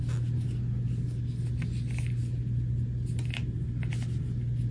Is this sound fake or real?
real